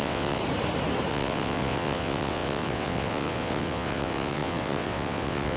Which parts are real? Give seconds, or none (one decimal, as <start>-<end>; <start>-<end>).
0.4-1.1